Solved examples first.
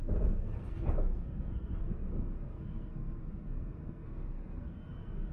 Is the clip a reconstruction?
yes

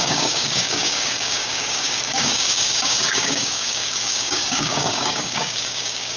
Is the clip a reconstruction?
yes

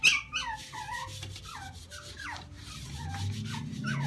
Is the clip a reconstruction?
no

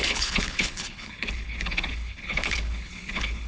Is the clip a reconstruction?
yes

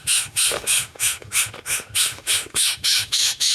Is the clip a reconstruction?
yes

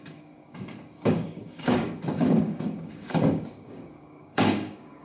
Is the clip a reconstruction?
yes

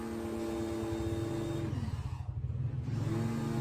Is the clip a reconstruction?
no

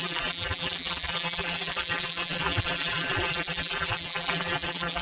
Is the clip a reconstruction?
yes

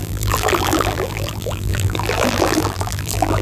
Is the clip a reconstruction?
yes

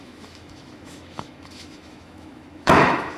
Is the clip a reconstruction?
yes